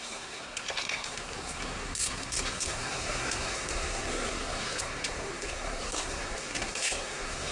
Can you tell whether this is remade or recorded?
remade